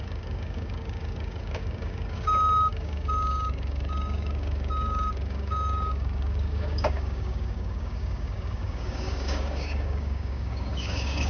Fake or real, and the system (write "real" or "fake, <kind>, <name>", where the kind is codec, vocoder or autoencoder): fake, codec, DAC